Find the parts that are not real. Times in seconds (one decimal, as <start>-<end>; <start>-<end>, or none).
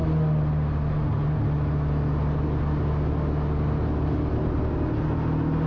none